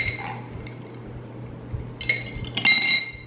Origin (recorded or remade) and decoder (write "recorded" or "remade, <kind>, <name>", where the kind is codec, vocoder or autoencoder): recorded